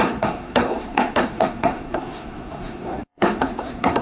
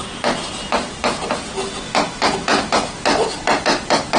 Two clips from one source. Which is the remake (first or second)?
first